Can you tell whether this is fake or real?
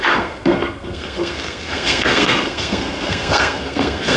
fake